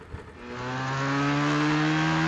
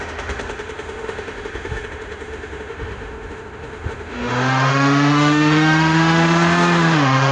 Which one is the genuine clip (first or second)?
first